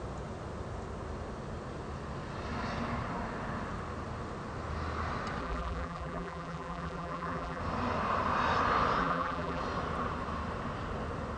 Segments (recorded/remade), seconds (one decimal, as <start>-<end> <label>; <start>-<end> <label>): 0.0-5.4 recorded; 5.4-7.6 remade; 7.6-9.0 recorded; 9.0-9.6 remade; 9.6-11.4 recorded